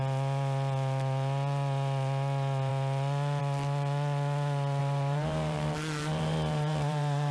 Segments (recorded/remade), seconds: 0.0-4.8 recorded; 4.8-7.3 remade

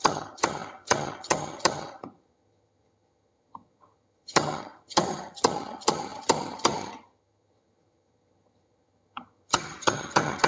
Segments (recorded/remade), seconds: 0.0-10.5 remade

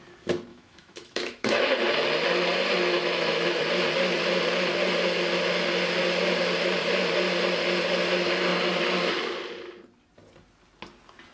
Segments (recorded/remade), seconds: 0.0-0.5 recorded; 0.5-1.7 remade; 1.7-3.0 recorded; 3.0-3.6 remade; 3.6-11.3 recorded